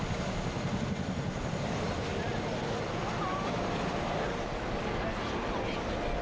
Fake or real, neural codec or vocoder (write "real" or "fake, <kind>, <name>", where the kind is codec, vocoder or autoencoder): real